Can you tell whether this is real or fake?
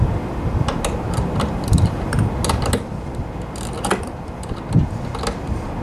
real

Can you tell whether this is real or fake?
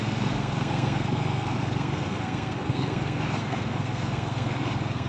fake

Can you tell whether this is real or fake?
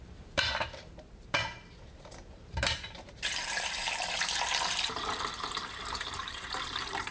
fake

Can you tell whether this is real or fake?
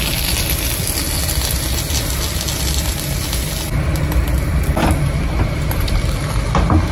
real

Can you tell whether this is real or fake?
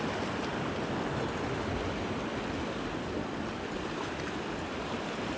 real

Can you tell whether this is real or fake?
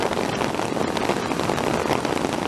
fake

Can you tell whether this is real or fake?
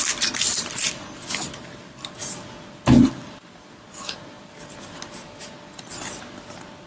real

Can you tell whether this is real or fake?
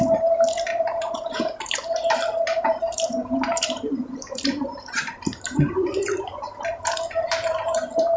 fake